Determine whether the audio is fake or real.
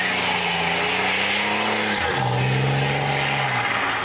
real